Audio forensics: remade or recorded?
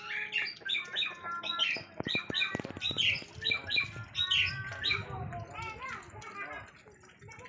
recorded